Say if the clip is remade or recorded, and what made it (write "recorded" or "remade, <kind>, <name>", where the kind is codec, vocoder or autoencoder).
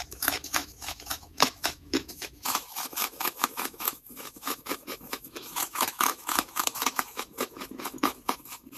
remade, autoencoder, DAC-VAE